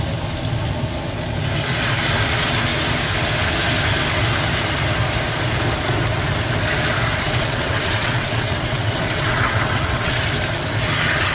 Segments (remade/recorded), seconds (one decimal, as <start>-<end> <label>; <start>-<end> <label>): 0.0-7.3 recorded; 7.3-10.2 remade; 10.2-11.3 recorded